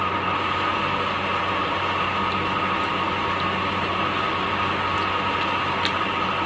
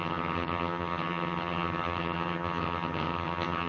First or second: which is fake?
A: second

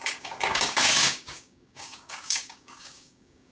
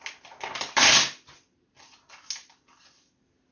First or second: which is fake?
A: first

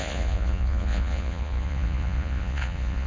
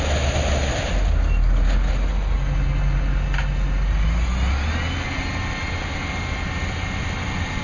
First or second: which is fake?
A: first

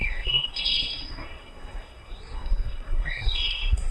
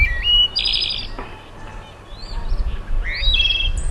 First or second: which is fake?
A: first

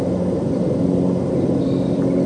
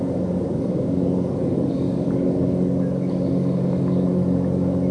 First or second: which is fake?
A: second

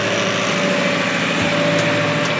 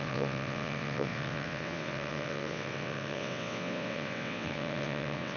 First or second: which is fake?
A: second